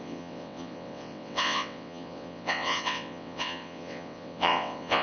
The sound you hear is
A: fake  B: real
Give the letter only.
A